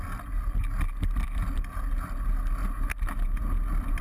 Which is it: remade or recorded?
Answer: recorded